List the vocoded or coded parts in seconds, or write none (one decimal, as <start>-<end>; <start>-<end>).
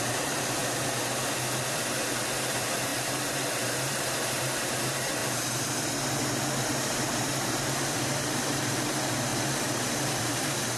0.0-0.6; 1.7-5.2; 6.7-9.3; 10.2-10.8